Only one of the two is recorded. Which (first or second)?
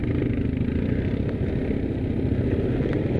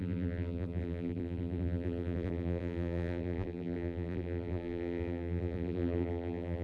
first